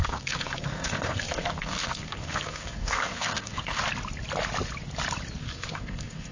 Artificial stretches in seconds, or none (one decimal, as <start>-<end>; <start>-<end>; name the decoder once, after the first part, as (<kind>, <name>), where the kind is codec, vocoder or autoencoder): 0.0-3.8 (codec, SNAC); 5.4-6.3